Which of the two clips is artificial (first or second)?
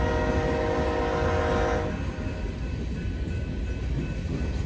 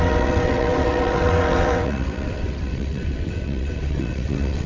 second